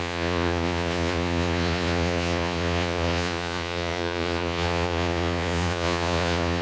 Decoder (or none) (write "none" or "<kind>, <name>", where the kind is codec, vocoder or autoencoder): vocoder, Vocos